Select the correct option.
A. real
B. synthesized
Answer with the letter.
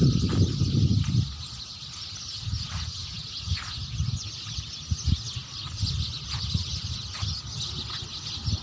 A